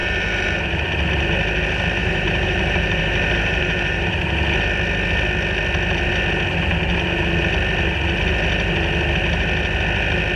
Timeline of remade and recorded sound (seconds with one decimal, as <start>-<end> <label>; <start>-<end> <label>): 0.0-0.9 remade; 0.9-2.0 recorded; 2.0-4.1 remade; 4.1-10.4 recorded